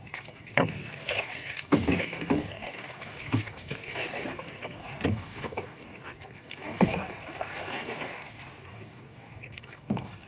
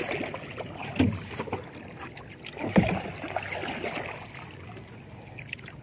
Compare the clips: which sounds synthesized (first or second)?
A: first